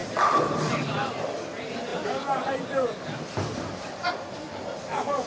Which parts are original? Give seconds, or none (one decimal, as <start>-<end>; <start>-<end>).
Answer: 0.0-5.3